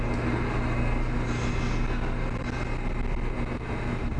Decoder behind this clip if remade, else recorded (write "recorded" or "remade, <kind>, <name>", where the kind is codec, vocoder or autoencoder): recorded